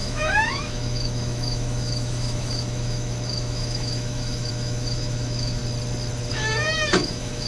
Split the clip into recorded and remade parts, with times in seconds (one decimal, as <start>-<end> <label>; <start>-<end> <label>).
0.0-5.6 remade; 5.6-6.3 recorded; 6.3-7.5 remade